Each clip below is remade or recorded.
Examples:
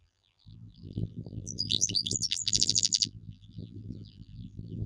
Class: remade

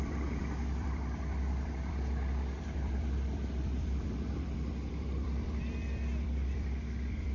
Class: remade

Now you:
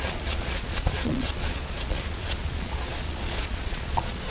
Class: remade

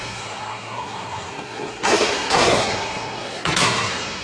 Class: remade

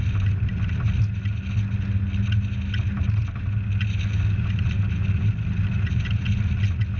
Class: recorded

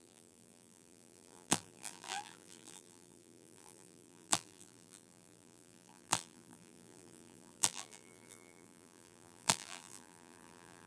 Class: remade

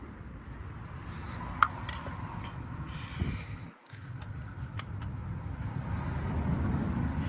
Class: recorded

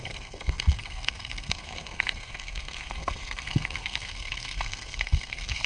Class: remade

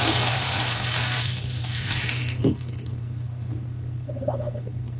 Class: remade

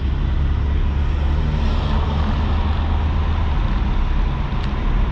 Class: recorded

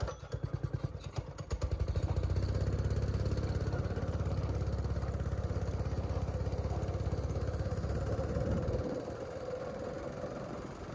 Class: recorded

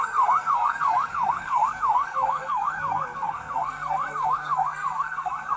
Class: remade